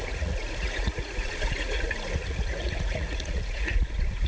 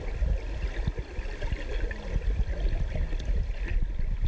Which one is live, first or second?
second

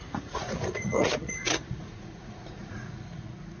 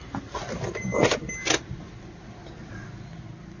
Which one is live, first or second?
second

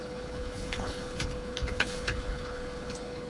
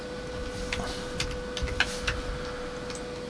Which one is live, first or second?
second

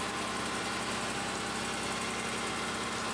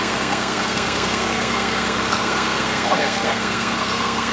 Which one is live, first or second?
first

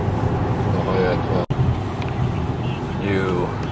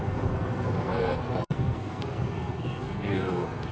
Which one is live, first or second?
first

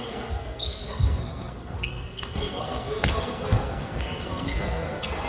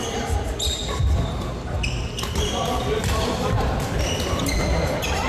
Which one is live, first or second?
second